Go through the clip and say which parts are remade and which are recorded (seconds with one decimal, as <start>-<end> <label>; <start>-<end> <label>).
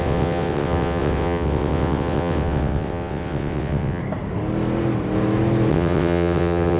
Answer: 0.0-4.0 remade; 4.0-5.7 recorded; 5.7-6.8 remade